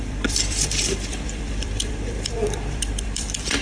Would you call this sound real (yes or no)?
no